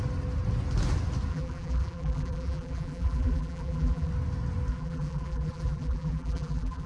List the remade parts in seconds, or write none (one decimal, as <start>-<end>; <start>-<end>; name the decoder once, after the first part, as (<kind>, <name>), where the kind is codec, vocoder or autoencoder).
1.3-4.1 (vocoder, BigVGAN v2); 4.7-6.9